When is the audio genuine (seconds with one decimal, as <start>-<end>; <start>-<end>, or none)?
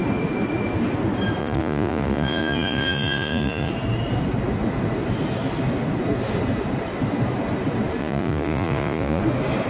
0.0-1.4; 3.7-8.0; 9.2-9.7